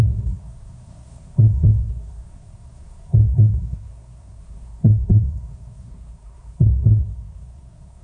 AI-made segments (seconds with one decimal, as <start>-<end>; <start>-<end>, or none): 0.0-8.0